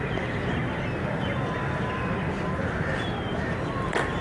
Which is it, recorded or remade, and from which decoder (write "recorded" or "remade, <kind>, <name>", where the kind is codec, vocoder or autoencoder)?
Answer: remade, vocoder, BigVGAN v2